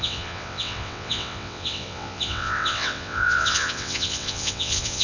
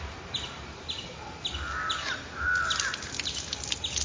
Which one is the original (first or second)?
second